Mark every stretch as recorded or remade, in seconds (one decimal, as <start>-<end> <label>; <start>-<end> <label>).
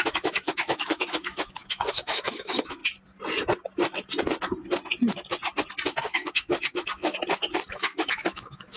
0.0-2.8 remade; 2.8-6.0 recorded; 6.0-7.1 remade; 7.1-7.7 recorded; 7.7-8.8 remade